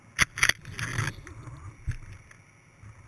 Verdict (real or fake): real